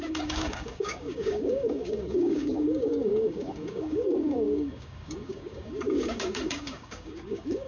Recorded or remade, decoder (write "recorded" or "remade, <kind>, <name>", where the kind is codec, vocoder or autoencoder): remade, codec, DAC